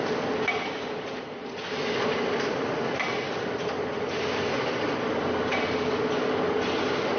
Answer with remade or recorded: recorded